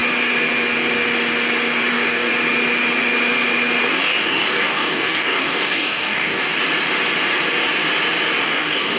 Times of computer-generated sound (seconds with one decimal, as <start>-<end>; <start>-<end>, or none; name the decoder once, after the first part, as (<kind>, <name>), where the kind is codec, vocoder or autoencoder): 1.9-2.3 (codec, DAC); 3.9-6.4; 8.4-9.0